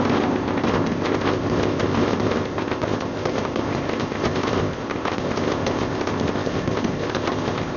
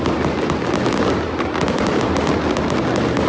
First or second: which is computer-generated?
first